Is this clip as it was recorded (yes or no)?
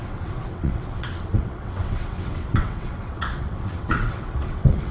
no